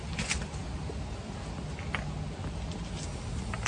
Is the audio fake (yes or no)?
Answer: no